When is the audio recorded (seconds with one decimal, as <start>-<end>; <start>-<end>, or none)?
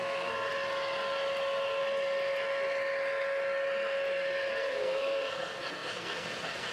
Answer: 0.5-4.5